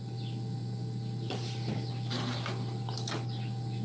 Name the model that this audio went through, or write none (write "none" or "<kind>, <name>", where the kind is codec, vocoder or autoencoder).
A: none